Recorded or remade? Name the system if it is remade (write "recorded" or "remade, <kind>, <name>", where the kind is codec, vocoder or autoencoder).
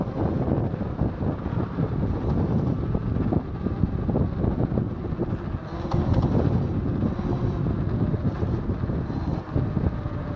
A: recorded